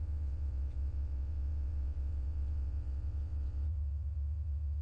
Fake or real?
fake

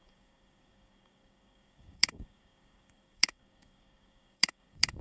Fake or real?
fake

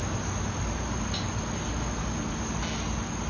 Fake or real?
real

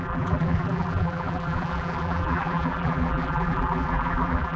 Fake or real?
fake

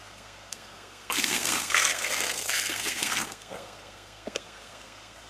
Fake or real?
fake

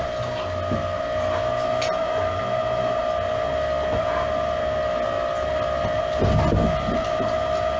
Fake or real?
real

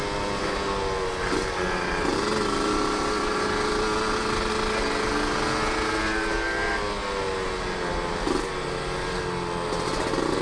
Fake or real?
real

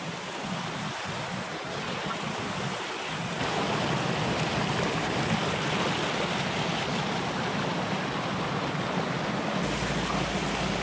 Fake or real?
real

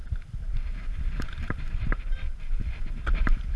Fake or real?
real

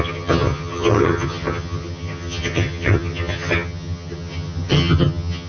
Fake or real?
fake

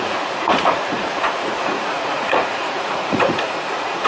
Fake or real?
fake